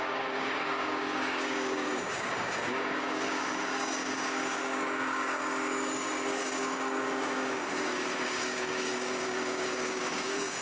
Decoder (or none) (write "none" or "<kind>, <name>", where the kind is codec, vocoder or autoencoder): codec, DAC